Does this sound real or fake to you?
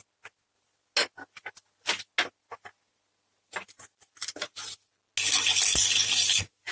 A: real